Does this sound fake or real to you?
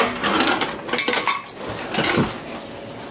real